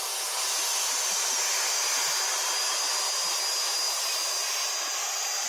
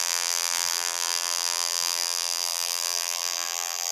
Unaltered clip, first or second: first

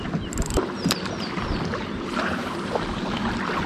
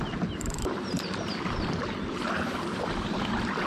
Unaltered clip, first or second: first